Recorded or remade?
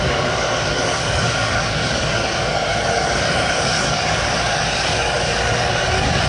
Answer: remade